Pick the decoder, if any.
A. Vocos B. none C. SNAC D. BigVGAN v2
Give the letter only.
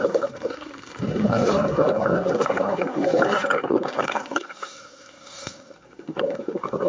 C